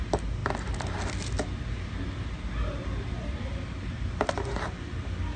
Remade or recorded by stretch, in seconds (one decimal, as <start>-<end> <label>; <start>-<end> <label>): 0.0-5.4 recorded